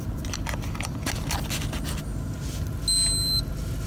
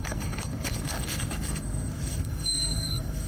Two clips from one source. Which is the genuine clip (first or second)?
first